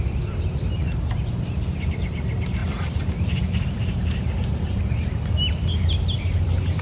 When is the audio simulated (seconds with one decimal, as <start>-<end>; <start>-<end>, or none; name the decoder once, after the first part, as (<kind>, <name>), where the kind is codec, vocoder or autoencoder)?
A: 2.6-4.2 (vocoder, BigVGAN v2)